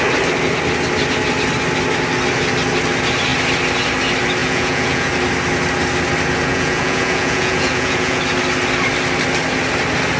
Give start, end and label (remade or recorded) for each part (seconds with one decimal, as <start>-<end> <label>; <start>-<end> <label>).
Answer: 0.0-4.4 recorded; 4.4-5.1 remade; 5.1-6.5 recorded; 6.5-8.2 remade; 8.2-10.2 recorded